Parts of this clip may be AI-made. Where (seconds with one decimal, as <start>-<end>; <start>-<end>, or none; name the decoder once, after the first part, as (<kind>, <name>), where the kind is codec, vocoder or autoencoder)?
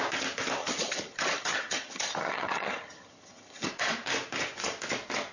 0.6-3.7 (vocoder, HiFi-GAN)